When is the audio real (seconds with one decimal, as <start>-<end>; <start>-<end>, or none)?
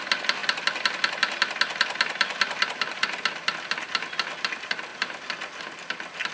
0.0-6.3